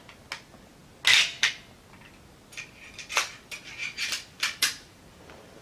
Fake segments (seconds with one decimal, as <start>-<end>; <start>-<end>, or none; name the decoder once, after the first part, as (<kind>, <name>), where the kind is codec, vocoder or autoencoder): 3.8-5.0 (vocoder, BigVGAN v2)

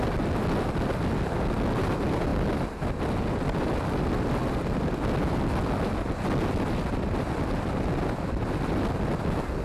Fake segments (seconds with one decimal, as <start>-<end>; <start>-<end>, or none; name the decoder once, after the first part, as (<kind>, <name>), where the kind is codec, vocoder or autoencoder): none

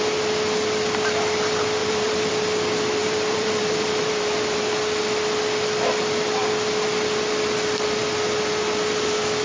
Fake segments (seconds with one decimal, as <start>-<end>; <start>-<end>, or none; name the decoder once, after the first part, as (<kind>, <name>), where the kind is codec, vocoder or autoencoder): 1.8-2.3 (vocoder, BigVGAN v2); 3.0-4.6

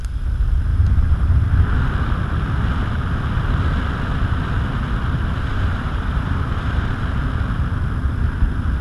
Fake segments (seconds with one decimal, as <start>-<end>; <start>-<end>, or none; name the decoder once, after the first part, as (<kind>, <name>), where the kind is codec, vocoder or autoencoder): 0.7-1.3 (vocoder, BigVGAN v2); 5.5-6.9

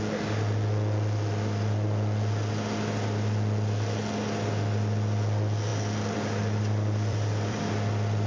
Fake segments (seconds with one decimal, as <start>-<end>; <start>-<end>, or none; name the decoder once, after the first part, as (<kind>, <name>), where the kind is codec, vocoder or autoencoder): 5.7-7.7 (vocoder, BigVGAN v2)

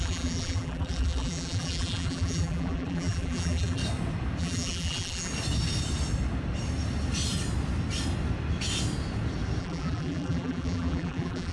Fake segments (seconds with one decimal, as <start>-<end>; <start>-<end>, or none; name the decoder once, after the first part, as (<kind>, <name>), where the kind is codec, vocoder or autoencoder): 0.0-3.8 (vocoder, BigVGAN v2); 4.4-5.3; 9.6-11.5

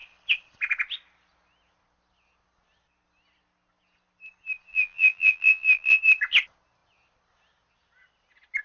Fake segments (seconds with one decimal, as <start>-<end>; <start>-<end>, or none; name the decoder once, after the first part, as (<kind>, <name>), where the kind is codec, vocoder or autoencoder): 4.7-6.0 (vocoder, BigVGAN v2)

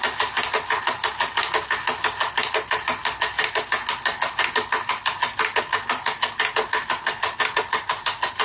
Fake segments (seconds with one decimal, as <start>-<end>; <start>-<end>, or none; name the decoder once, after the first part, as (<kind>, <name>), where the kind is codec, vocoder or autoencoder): none